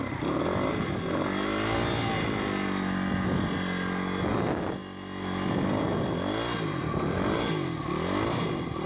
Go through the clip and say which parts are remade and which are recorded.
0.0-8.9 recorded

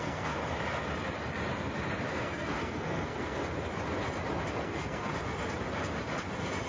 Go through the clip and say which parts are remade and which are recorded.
0.0-0.4 remade; 0.4-2.1 recorded; 2.1-3.4 remade; 3.4-4.6 recorded; 4.6-5.1 remade; 5.1-6.7 recorded

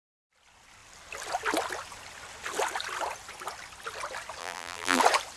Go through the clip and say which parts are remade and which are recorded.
0.0-4.4 recorded; 4.4-5.0 remade; 5.0-5.4 recorded

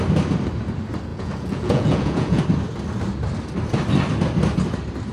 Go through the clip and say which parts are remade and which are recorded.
0.0-1.1 recorded; 1.1-2.4 remade; 2.4-5.1 recorded

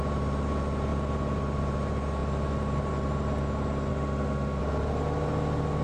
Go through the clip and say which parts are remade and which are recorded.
0.0-3.9 recorded; 3.9-4.6 remade; 4.6-5.8 recorded

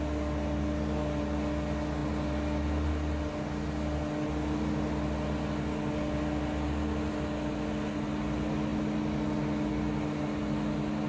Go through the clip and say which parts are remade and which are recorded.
0.0-11.1 recorded

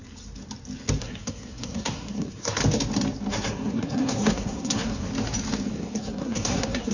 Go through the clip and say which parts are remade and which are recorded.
0.0-1.0 recorded; 1.0-2.6 remade; 2.6-3.3 recorded; 3.3-5.1 remade; 5.1-5.7 recorded; 5.7-6.9 remade

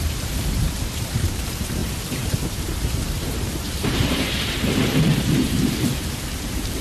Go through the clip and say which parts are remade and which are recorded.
0.0-6.8 remade